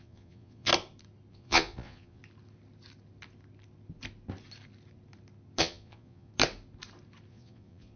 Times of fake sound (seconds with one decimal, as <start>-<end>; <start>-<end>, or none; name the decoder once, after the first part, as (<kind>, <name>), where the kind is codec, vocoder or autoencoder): 0.0-0.7 (vocoder, Vocos); 1.3-2.2; 5.6-6.3; 7.3-8.0